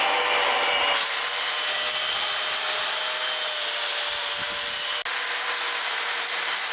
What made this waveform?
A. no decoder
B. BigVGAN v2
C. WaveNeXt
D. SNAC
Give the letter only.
A